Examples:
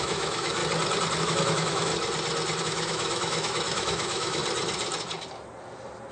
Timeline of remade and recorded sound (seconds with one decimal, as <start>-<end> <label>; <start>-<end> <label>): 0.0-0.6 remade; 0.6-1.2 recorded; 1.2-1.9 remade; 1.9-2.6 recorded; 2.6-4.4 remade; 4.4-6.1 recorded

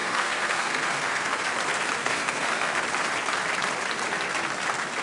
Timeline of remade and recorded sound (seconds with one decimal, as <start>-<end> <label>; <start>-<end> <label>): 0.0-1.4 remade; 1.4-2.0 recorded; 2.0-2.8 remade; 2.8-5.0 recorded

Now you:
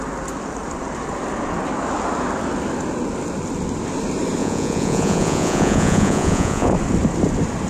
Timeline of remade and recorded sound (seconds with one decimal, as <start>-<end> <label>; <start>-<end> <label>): 0.0-4.4 recorded; 4.4-6.7 remade; 6.7-7.7 recorded

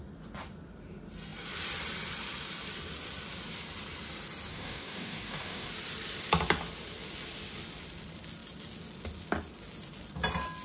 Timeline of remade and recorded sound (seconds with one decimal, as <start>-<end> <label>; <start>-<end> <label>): 0.0-4.5 recorded; 4.5-5.7 remade; 5.7-10.6 recorded